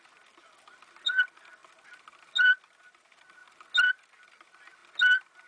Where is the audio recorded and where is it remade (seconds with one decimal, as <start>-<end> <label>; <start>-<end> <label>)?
0.0-5.5 recorded